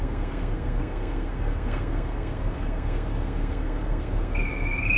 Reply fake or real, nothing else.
fake